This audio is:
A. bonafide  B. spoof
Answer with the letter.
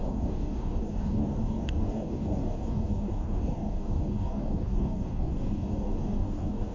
B